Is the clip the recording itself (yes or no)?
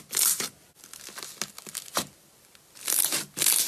yes